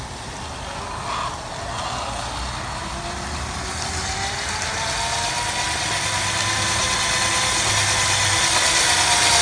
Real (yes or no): yes